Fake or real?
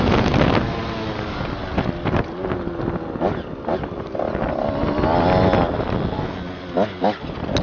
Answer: real